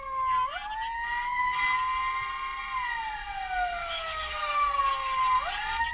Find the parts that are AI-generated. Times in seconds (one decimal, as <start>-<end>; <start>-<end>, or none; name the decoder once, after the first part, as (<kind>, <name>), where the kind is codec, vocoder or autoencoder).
3.8-4.8 (autoencoder, DAC-VAE)